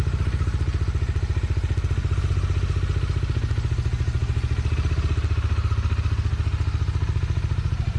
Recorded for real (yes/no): yes